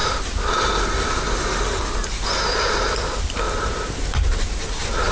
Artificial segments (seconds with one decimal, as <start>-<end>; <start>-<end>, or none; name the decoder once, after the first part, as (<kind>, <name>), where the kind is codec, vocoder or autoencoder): none